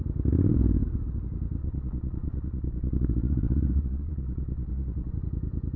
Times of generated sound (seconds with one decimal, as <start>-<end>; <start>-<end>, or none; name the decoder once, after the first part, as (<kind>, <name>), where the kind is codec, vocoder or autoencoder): 1.6-5.1 (vocoder, Vocos)